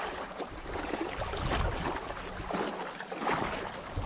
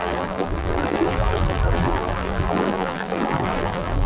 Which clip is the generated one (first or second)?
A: second